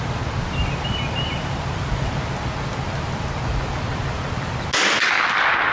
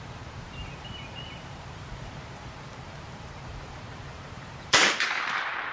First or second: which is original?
first